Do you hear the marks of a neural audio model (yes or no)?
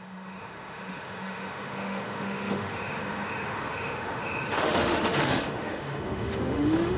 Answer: yes